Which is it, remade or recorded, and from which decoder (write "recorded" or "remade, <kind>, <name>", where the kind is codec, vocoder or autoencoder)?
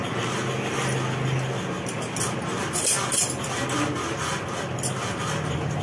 recorded